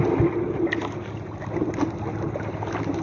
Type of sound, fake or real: real